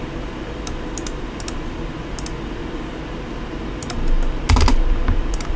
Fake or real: real